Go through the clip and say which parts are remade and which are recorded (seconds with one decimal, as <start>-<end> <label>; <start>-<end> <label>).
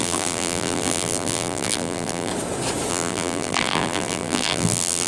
0.0-2.3 remade; 2.3-2.9 recorded; 2.9-5.1 remade